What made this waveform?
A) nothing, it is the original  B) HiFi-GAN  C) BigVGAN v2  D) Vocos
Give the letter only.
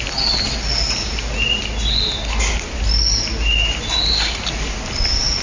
A